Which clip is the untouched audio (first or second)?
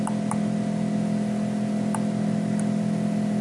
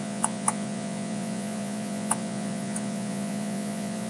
first